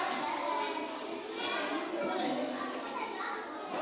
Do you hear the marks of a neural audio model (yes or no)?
no